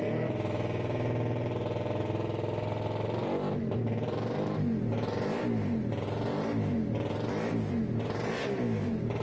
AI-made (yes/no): no